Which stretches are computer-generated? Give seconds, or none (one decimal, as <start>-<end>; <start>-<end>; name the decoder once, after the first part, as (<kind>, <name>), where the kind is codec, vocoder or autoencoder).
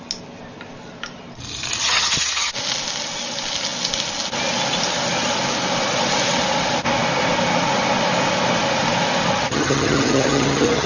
1.8-2.5 (vocoder, HiFi-GAN); 9.3-10.9